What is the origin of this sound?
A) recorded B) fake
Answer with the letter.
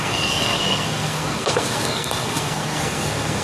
B